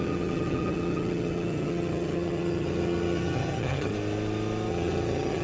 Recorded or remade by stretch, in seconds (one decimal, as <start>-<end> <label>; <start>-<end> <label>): 0.0-3.9 remade; 3.9-4.7 recorded; 4.7-5.4 remade